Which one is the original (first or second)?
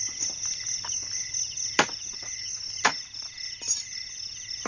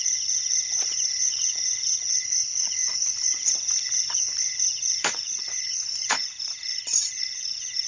first